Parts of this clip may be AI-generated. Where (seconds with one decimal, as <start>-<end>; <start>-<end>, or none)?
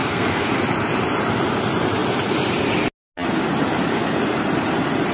0.0-0.5